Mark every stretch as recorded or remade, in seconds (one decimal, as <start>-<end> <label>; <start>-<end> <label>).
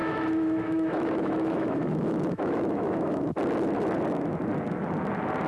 0.0-3.3 remade; 3.3-5.5 recorded